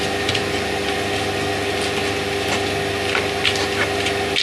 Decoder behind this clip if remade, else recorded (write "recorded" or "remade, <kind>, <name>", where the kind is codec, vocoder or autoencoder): recorded